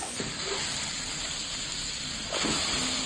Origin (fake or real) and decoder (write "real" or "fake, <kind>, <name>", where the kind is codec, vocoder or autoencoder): real